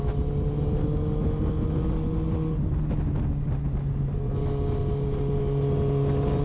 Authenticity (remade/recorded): recorded